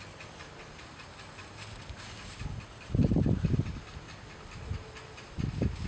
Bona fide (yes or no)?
yes